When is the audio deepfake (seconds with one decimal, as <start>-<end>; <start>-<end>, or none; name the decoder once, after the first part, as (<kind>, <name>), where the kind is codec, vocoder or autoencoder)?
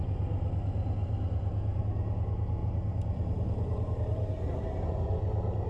1.0-1.8 (vocoder, BigVGAN v2); 2.6-5.1